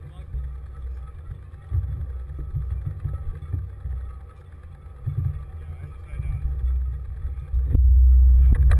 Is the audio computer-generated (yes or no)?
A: no